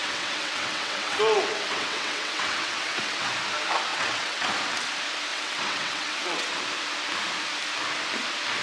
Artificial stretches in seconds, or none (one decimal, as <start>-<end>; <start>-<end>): 0.0-3.3; 3.9-4.5; 5.3-6.6